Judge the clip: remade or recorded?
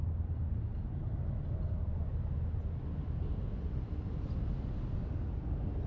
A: recorded